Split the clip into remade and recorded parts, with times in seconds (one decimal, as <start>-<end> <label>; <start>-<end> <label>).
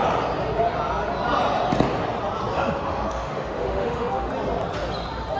0.0-2.5 recorded; 2.5-4.3 remade; 4.3-5.4 recorded